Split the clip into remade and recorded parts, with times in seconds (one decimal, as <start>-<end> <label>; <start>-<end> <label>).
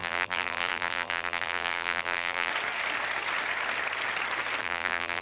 0.0-2.5 remade; 2.5-4.6 recorded; 4.6-5.2 remade